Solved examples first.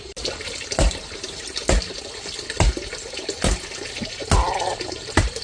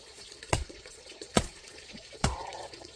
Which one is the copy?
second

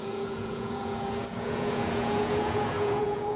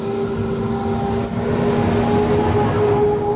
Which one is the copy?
first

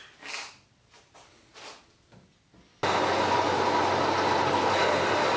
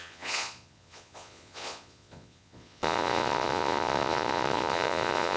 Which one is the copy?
second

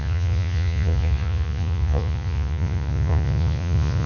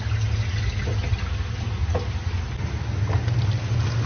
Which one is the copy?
first